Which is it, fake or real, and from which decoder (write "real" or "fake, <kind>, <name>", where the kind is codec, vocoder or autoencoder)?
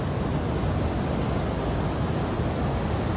real